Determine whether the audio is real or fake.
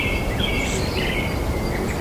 real